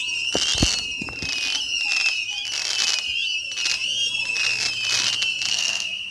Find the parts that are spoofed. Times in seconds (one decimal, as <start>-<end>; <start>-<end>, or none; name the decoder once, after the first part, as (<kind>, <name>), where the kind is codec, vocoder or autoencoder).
5.5-6.1 (codec, SNAC)